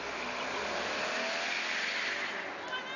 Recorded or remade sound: recorded